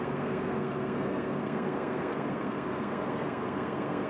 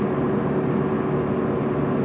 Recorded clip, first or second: second